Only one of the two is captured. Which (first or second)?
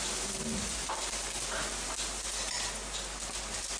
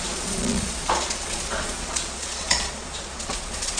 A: first